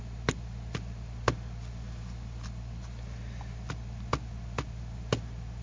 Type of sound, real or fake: real